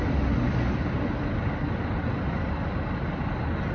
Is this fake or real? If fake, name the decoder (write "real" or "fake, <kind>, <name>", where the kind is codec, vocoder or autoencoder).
real